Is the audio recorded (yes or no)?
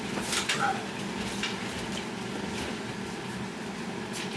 yes